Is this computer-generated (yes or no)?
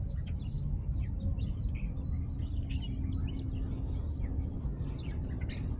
no